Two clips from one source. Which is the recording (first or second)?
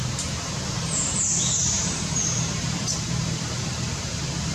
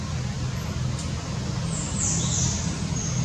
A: second